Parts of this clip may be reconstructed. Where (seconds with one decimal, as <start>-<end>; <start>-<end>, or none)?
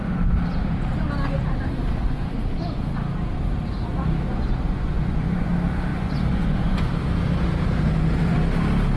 2.0-2.6; 4.3-5.5; 5.9-6.9